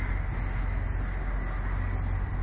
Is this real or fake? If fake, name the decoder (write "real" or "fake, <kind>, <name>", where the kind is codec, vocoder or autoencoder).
real